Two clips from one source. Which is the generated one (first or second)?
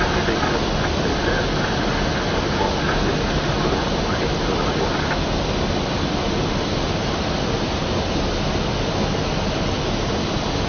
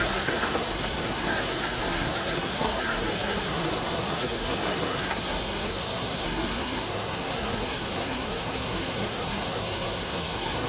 second